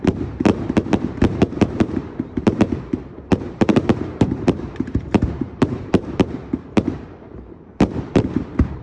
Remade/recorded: remade